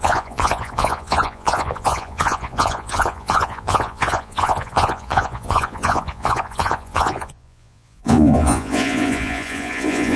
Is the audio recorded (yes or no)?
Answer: no